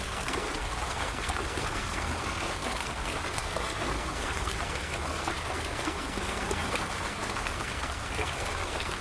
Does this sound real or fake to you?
fake